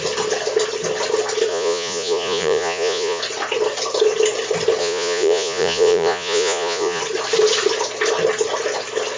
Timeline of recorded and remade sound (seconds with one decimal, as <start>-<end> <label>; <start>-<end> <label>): 0.0-1.5 recorded; 1.5-3.2 remade; 3.2-4.8 recorded; 4.8-7.0 remade; 7.0-9.2 recorded